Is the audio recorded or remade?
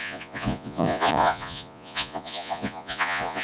remade